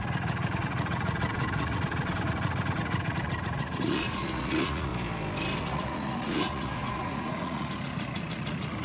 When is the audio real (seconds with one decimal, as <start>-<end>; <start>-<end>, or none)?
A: 4.9-5.6